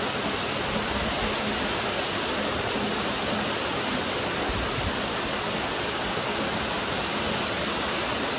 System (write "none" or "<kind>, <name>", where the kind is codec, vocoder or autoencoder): none